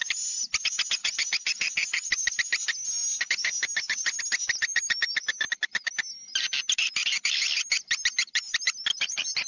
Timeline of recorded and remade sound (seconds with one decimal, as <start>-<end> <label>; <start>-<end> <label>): 0.0-9.5 recorded